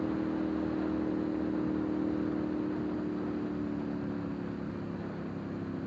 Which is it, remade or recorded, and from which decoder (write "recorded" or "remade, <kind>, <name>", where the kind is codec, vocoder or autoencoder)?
recorded